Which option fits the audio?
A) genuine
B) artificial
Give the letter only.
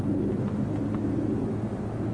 B